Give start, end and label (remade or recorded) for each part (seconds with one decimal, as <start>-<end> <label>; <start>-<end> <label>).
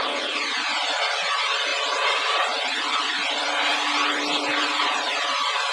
0.0-5.7 recorded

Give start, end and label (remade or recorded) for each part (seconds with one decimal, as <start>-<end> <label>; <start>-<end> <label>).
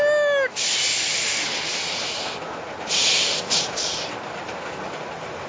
0.0-5.5 recorded